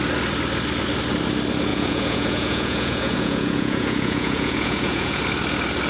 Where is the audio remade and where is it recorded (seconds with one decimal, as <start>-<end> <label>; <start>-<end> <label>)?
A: 0.0-1.7 recorded; 1.7-5.2 remade; 5.2-5.9 recorded